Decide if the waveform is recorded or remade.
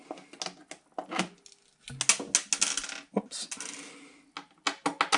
recorded